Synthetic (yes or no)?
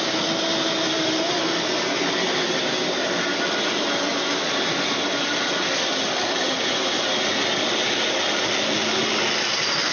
no